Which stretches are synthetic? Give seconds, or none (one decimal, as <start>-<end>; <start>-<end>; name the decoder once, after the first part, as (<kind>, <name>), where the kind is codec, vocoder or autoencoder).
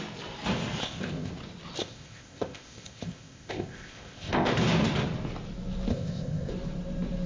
0.8-1.3 (codec, ZipCodec); 1.8-4.5; 5.9-6.5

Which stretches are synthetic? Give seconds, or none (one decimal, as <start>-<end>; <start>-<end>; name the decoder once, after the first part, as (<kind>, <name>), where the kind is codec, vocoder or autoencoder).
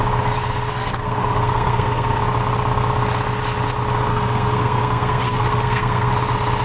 0.7-2.2 (codec, SNAC); 4.1-6.1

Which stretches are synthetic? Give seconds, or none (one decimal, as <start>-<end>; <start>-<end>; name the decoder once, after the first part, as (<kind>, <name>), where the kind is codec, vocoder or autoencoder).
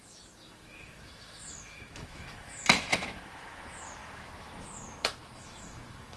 0.0-6.2 (autoencoder, DAC-VAE)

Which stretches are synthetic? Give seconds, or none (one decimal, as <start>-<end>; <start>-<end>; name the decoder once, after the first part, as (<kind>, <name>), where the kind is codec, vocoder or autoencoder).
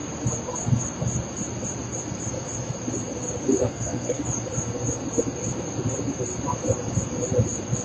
3.6-4.2 (codec, SNAC)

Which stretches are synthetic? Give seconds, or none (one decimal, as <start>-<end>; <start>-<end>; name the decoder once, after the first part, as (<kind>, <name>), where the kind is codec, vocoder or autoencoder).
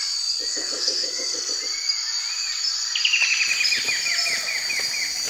0.5-1.5 (codec, SNAC)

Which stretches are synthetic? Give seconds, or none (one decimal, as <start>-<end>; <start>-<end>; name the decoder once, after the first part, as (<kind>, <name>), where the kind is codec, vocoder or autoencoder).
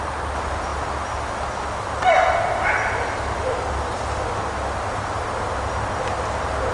none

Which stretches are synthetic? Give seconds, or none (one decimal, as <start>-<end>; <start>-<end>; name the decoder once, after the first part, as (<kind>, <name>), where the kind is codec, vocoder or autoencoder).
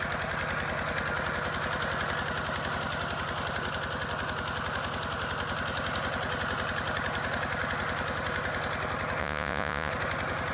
9.2-9.9 (vocoder, Vocos)